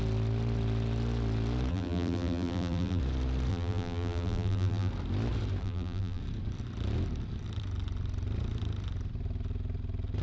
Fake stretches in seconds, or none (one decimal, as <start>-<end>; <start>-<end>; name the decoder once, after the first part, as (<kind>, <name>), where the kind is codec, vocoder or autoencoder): 1.7-3.0 (vocoder, BigVGAN v2); 3.5-4.9; 5.6-6.2